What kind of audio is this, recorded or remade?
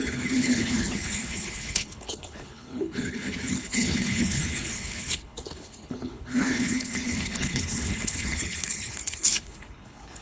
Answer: remade